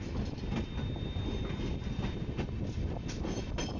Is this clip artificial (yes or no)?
no